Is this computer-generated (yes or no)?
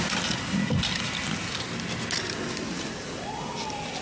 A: no